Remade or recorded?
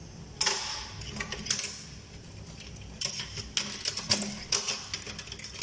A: recorded